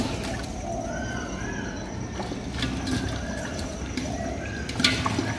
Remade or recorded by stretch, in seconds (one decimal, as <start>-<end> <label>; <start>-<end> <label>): 0.0-3.2 recorded; 3.2-4.3 remade; 4.3-5.4 recorded